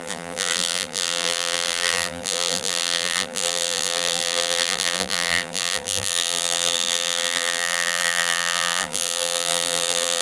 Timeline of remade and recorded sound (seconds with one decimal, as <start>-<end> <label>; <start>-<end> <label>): 0.0-10.2 remade

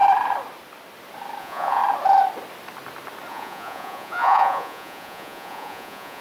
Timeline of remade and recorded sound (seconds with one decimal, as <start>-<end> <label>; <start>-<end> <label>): 0.0-1.4 recorded; 1.4-1.8 remade; 1.8-3.3 recorded; 3.3-6.2 remade

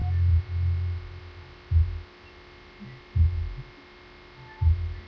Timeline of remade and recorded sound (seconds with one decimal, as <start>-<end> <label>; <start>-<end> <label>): 0.0-5.1 recorded

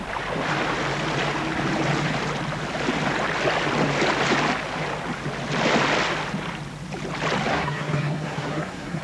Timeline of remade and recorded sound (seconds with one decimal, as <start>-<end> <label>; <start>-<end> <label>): 0.0-7.5 recorded; 7.5-9.0 remade

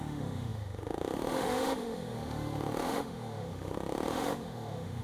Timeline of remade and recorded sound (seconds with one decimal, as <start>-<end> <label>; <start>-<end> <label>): 0.0-5.0 remade

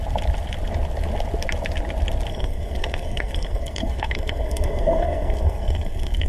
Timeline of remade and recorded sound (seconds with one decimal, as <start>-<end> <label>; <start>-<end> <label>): 0.0-2.3 recorded; 2.3-6.3 remade

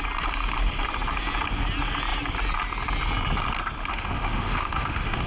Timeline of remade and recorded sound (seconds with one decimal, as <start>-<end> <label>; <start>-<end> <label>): 0.0-3.9 recorded; 3.9-5.3 remade